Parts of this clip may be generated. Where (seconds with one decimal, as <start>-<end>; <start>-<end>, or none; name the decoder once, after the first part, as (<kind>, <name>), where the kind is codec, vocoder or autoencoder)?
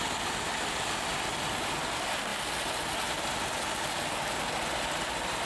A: none